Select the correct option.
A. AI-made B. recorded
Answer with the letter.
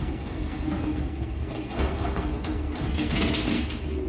A